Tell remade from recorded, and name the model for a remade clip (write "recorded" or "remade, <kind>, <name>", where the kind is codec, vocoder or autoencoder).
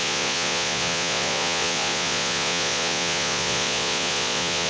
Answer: remade, vocoder, Vocos